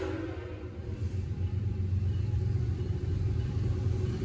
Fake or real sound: fake